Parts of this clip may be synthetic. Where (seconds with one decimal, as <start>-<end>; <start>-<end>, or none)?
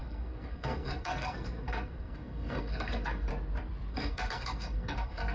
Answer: 0.0-3.3; 3.9-5.3